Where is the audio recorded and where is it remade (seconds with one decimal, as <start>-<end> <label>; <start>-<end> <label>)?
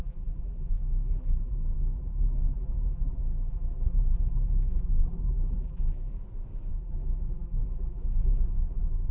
0.0-6.1 remade; 6.1-6.7 recorded; 6.7-9.1 remade